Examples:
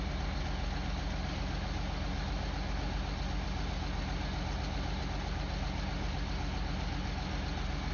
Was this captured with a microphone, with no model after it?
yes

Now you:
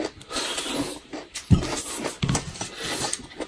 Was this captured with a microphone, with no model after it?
no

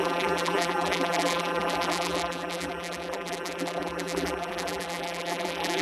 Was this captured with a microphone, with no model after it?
no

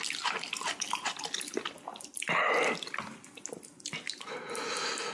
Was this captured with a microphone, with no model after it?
yes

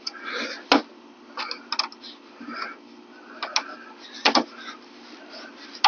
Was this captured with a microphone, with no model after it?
yes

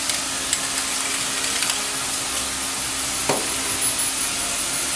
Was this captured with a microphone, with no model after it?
yes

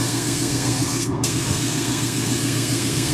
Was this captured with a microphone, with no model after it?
no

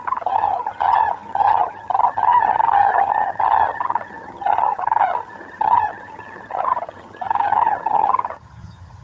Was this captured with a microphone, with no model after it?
no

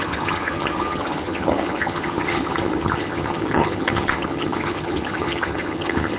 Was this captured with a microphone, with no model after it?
no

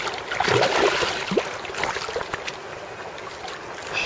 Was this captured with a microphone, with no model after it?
yes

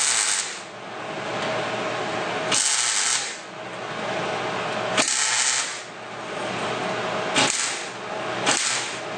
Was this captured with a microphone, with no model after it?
yes